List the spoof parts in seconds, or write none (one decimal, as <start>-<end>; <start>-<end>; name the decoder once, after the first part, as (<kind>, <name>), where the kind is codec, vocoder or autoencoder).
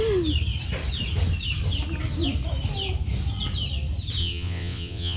4.2-5.2 (vocoder, WaveNeXt)